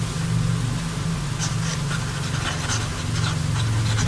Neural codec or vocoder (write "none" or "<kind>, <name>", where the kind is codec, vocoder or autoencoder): none